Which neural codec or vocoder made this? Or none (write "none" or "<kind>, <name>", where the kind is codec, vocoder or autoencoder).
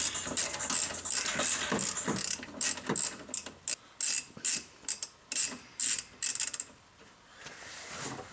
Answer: none